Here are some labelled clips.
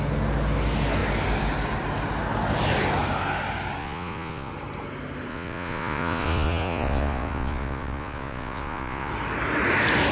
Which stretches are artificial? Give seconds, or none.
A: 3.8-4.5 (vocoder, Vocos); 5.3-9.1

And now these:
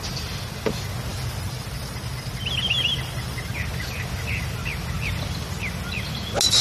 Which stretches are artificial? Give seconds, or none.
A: 1.1-3.5 (vocoder, BigVGAN v2)

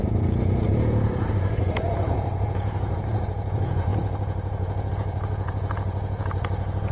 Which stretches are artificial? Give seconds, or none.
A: 0.0-6.9 (vocoder, Vocos)

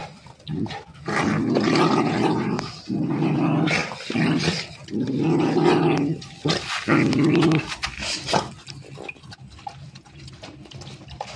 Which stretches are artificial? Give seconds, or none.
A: none